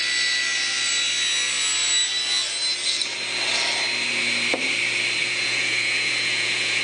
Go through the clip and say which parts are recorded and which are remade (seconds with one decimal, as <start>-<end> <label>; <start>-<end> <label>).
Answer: 0.0-5.2 recorded; 5.2-6.8 remade